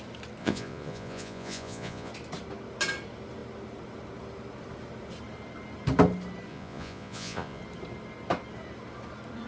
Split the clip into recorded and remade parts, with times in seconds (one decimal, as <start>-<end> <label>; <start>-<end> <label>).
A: 0.0-0.4 recorded; 0.4-2.1 remade; 2.1-6.5 recorded; 6.5-7.6 remade; 7.6-9.5 recorded